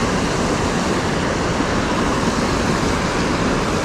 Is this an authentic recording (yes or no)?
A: yes